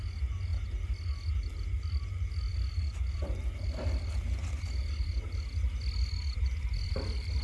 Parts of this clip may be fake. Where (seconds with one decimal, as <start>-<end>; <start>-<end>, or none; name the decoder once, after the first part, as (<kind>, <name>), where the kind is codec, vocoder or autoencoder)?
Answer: none